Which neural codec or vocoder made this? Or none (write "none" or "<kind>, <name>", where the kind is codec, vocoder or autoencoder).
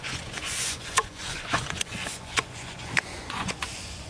vocoder, Vocos